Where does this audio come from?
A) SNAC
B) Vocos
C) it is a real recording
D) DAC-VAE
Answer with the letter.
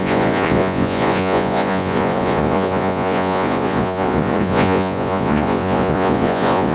B